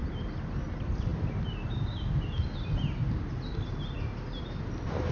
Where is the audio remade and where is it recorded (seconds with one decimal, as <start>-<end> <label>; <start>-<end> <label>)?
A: 0.0-0.7 recorded; 0.7-3.0 remade; 3.0-4.4 recorded; 4.4-5.1 remade